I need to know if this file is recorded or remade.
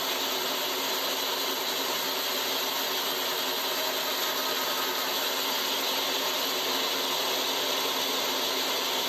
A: recorded